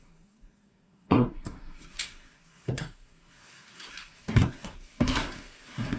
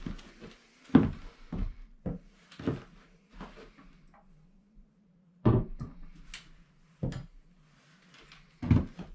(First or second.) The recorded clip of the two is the second